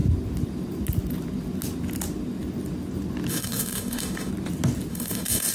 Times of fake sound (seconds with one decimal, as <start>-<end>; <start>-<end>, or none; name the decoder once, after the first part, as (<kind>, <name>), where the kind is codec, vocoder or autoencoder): 3.3-4.3 (autoencoder, DAC-VAE); 4.9-5.5

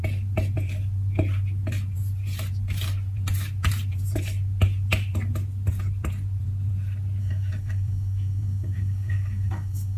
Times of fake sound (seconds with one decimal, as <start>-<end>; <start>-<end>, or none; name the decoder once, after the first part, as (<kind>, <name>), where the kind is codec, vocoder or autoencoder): 7.2-10.0 (codec, DAC)

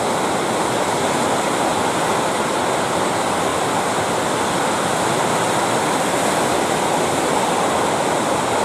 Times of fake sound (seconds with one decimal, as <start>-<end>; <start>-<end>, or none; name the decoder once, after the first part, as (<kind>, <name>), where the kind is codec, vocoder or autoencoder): 1.7-2.6 (vocoder, BigVGAN v2)

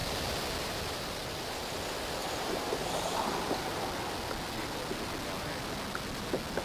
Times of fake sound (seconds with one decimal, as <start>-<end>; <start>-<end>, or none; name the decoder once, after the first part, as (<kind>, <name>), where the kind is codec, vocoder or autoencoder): 0.0-1.7 (vocoder, BigVGAN v2); 2.2-3.2

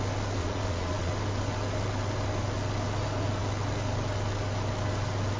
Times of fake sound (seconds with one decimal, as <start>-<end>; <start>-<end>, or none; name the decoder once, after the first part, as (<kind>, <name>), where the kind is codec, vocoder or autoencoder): 0.4-1.1 (vocoder, Vocos)

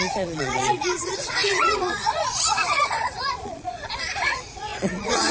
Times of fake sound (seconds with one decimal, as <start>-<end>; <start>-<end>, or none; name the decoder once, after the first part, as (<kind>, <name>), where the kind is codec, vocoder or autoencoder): 0.0-5.3 (vocoder, Vocos)